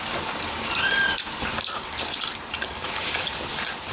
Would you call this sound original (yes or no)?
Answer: no